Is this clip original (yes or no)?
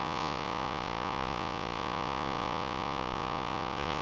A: no